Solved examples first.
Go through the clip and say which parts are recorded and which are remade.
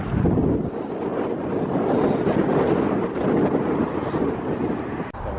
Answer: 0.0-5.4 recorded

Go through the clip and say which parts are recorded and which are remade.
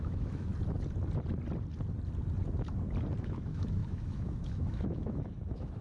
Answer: 0.0-0.5 remade; 0.5-3.2 recorded; 3.2-5.8 remade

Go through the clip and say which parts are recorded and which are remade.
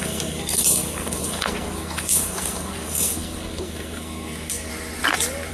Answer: 0.0-4.7 remade; 4.7-5.5 recorded